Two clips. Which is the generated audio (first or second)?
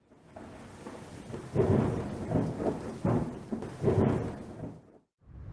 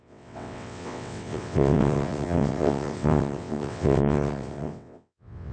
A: second